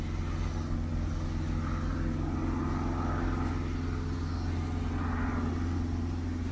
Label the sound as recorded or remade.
recorded